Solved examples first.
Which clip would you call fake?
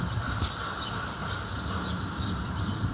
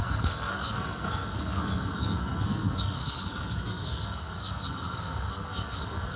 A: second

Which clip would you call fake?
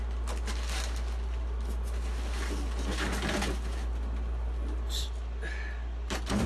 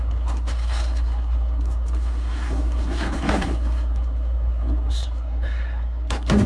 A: second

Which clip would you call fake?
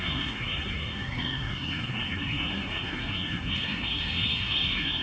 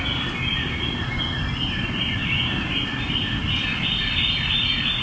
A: first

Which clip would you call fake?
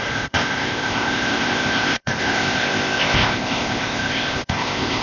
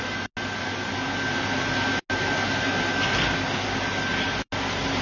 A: first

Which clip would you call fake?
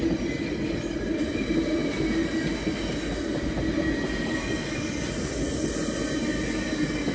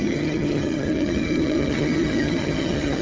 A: second